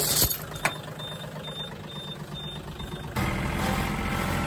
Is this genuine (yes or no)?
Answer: yes